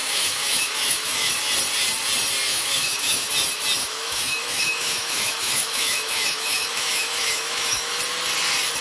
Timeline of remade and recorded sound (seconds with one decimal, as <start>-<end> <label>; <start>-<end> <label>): 0.0-1.3 remade; 1.3-2.5 recorded; 2.5-3.3 remade; 3.3-3.8 recorded; 3.8-8.0 remade; 8.0-8.8 recorded